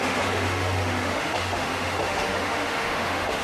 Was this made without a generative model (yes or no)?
no